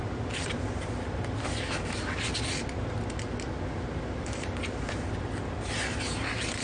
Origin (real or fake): real